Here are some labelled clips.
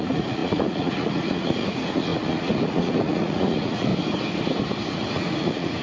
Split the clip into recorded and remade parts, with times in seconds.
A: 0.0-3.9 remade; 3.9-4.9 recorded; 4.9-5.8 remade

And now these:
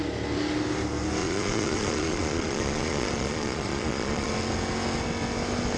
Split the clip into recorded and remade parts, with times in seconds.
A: 0.0-1.2 recorded; 1.2-4.3 remade; 4.3-5.8 recorded

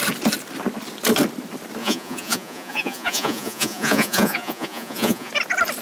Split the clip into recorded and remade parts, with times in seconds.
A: 0.0-1.8 recorded; 1.8-5.3 remade; 5.3-5.8 recorded